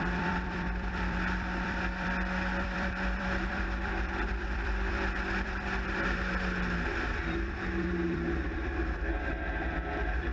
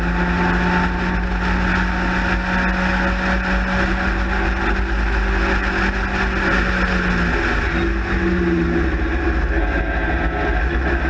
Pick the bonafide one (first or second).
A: second